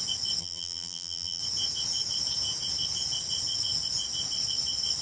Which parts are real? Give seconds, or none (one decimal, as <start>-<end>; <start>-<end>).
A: 0.0-0.4; 1.4-5.0